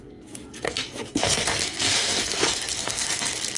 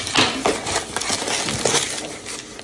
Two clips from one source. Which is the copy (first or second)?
first